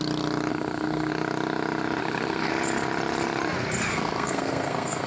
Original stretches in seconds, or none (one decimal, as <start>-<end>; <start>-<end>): 0.0-0.5; 1.1-2.0; 2.5-3.9